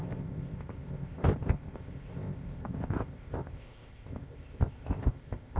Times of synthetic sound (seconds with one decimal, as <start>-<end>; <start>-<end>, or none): 0.0-5.6